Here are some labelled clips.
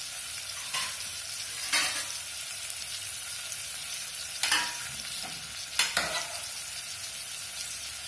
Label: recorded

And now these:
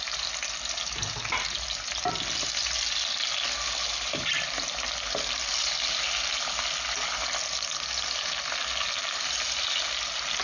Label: recorded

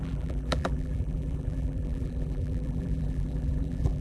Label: remade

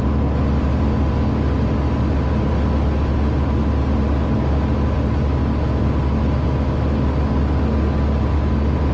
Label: recorded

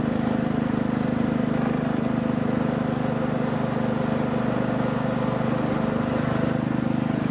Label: recorded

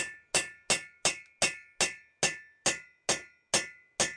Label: recorded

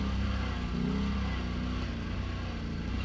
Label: recorded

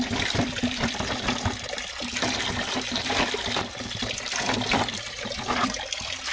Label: remade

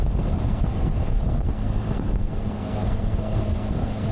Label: remade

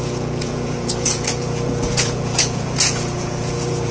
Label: remade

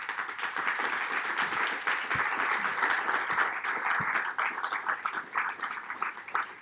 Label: recorded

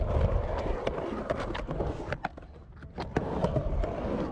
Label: recorded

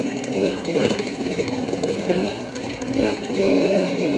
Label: remade